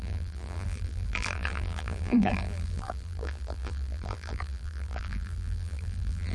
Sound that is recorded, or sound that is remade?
remade